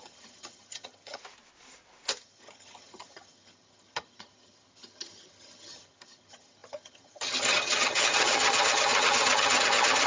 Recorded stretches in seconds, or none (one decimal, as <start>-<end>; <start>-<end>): 1.2-2.2